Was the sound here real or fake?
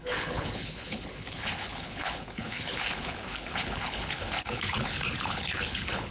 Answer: fake